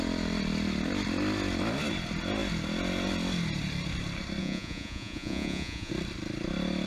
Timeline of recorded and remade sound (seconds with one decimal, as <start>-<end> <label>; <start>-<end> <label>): 0.0-4.4 recorded; 4.4-5.9 remade; 5.9-6.9 recorded